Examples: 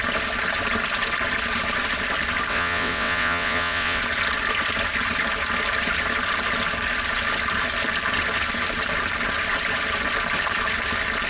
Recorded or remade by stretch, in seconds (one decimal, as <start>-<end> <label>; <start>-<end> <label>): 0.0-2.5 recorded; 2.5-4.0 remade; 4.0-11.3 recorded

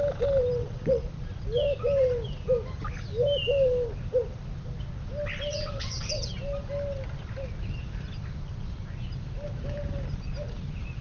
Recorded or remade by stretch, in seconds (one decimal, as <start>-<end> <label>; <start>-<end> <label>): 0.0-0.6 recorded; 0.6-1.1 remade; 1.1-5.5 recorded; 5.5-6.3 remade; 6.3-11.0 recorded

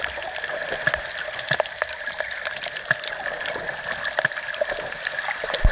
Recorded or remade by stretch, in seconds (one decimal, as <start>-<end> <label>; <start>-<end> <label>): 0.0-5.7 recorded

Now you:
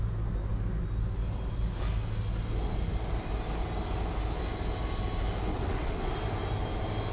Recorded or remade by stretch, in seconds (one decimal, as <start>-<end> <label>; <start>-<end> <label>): 0.0-5.5 recorded; 5.5-6.1 remade; 6.1-7.1 recorded

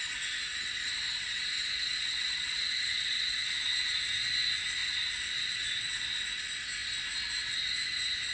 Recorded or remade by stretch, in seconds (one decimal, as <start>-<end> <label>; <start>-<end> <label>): 0.0-1.9 recorded; 1.9-3.5 remade; 3.5-8.3 recorded